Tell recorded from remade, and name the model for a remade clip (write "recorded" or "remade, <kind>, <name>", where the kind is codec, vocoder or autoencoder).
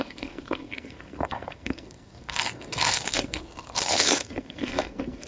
remade, codec, SNAC